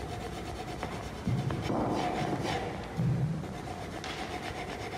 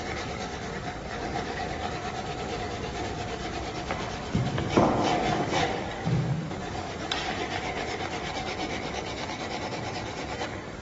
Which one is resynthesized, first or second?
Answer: second